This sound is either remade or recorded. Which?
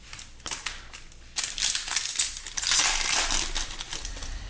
recorded